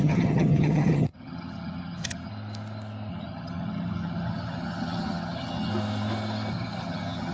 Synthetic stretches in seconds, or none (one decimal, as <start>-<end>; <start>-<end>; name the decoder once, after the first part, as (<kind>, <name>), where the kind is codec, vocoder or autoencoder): 0.0-2.3 (vocoder, HiFi-GAN); 3.1-5.7; 6.5-7.3